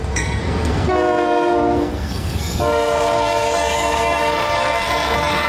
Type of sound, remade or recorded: remade